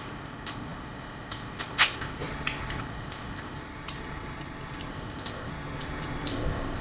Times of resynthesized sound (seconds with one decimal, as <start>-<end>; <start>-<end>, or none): 0.0-2.2; 2.8-3.6; 4.9-5.5; 6.3-6.8